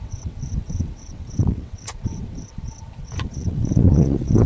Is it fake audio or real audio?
fake